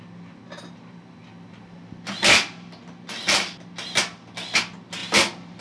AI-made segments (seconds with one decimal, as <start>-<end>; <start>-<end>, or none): none